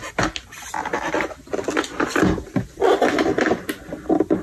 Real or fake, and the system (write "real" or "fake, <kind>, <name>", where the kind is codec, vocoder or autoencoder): real